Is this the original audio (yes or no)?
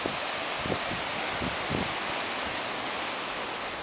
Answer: yes